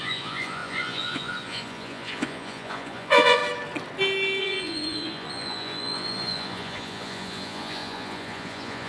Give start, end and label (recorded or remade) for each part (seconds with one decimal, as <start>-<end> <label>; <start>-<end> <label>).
0.0-3.4 remade; 3.4-4.4 recorded; 4.4-8.9 remade